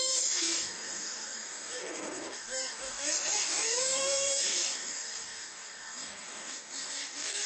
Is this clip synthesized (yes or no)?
yes